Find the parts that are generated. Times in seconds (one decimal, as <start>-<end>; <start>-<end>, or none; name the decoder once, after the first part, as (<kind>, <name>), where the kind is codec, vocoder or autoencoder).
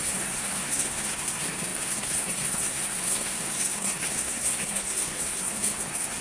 0.0-6.2 (codec, SNAC)